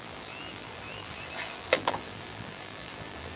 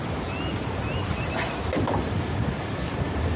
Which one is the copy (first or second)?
first